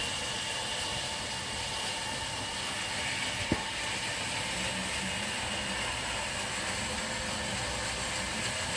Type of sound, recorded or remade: recorded